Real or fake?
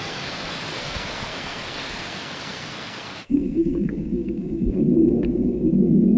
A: fake